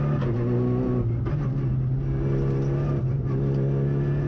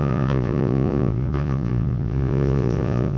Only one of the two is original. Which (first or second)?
first